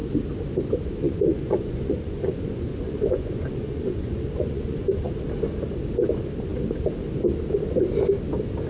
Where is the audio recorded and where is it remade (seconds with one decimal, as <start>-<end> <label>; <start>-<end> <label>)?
0.0-1.0 recorded; 1.0-5.1 remade; 5.1-8.7 recorded